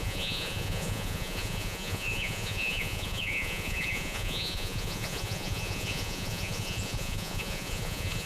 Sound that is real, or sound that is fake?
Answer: fake